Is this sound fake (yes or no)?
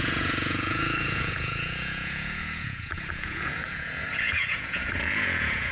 yes